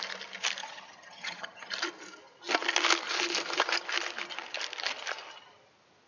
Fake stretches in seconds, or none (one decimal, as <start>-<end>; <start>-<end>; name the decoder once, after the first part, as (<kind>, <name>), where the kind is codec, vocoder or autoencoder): 0.6-1.7 (vocoder, HiFi-GAN)